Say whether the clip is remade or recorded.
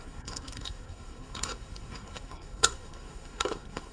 remade